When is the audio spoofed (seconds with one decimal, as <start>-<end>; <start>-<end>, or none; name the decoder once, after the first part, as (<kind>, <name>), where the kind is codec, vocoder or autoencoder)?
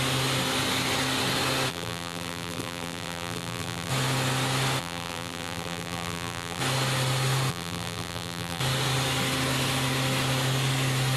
1.7-3.9 (vocoder, BigVGAN v2); 4.8-6.6; 7.5-8.6